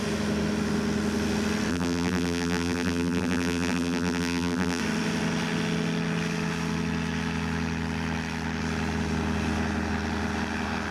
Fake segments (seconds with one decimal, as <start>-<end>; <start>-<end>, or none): 1.7-4.8